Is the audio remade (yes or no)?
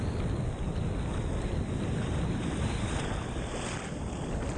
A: no